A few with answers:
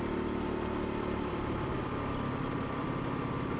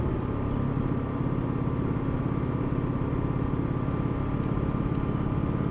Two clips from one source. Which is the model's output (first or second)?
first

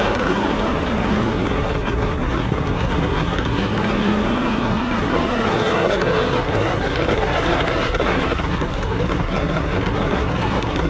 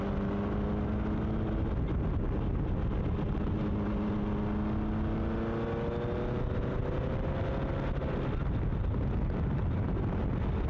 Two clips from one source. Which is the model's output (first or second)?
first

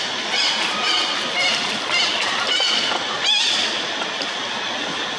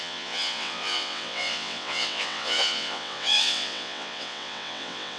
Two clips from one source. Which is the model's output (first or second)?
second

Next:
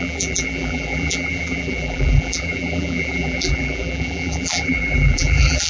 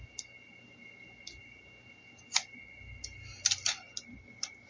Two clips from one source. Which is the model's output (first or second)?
first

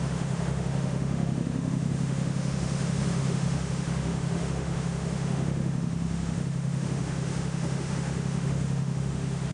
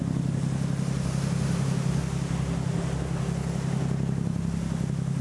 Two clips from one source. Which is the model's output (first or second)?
first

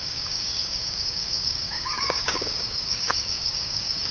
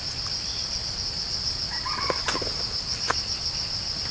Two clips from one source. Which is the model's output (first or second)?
first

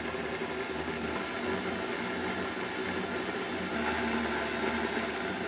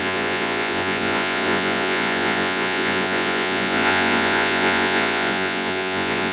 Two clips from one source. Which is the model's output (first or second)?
second